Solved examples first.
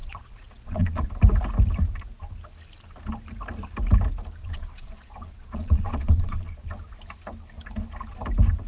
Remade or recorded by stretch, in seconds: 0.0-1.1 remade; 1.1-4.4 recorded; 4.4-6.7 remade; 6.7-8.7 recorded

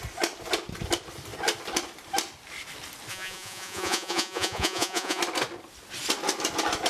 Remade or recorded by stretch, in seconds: 0.0-3.1 recorded; 3.1-5.2 remade; 5.2-6.9 recorded

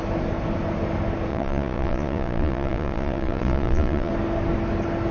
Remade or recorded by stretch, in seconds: 0.0-1.3 recorded; 1.3-4.1 remade; 4.1-5.1 recorded

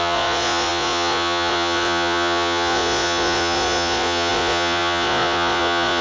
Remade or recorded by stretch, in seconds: 0.0-6.0 remade

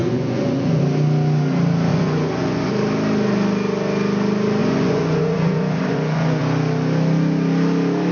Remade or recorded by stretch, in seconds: 0.0-0.8 remade; 0.8-1.9 recorded; 1.9-2.7 remade; 2.7-4.6 recorded; 4.6-6.4 remade; 6.4-8.1 recorded